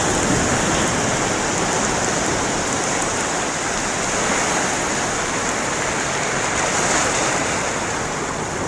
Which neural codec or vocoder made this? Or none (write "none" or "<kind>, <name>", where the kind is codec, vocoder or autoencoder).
none